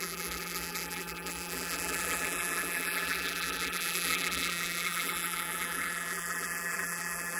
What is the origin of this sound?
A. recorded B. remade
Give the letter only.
B